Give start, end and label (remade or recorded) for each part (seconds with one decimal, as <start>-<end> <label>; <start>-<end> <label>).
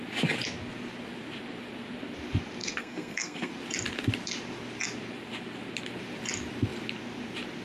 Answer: 0.0-2.6 recorded; 2.6-3.5 remade; 3.5-7.6 recorded